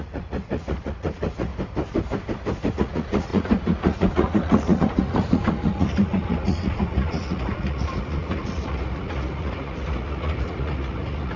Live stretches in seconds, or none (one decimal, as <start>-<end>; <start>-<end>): 1.5-2.7